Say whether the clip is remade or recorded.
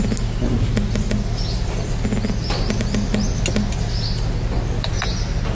recorded